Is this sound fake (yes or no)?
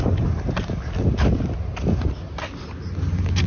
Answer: no